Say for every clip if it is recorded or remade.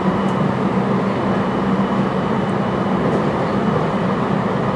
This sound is recorded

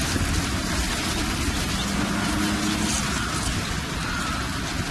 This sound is recorded